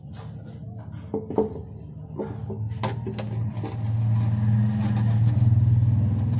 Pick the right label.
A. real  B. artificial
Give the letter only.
A